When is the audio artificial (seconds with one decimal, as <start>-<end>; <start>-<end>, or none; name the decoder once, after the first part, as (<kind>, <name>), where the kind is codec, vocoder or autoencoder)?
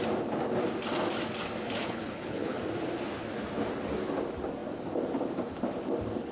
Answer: 1.8-2.6 (codec, HILCodec)